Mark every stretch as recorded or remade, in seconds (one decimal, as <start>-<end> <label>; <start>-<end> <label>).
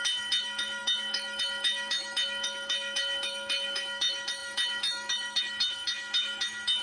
0.0-6.8 remade